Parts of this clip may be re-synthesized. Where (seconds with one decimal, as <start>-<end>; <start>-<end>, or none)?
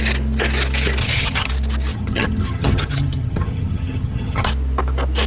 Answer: 1.0-1.5; 1.9-4.5